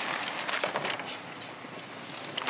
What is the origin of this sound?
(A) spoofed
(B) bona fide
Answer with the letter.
B